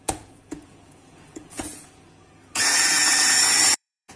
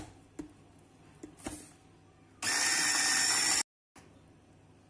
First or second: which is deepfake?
first